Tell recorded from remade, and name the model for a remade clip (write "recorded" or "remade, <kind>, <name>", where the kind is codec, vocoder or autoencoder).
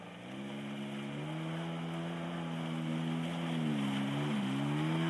recorded